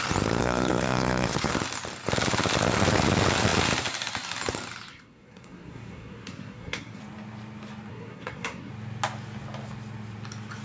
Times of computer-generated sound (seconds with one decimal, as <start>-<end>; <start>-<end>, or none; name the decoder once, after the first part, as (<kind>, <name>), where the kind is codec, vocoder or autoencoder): 0.4-1.5 (codec, SNAC); 4.9-7.0; 7.9-8.7